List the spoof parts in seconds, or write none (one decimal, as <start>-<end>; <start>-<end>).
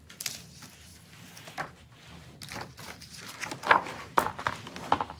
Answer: none